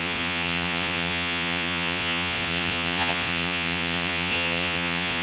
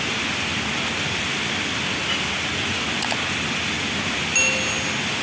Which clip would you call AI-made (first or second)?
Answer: first